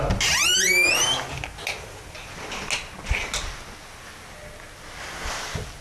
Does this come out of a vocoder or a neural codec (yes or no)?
no